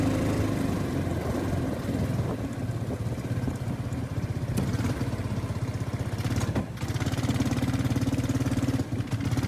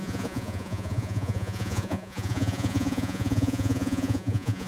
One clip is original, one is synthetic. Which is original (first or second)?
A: first